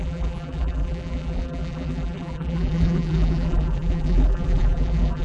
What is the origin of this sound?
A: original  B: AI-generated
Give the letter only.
B